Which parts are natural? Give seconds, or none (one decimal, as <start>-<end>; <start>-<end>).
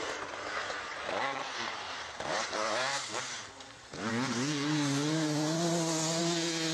0.0-0.9; 4.1-6.7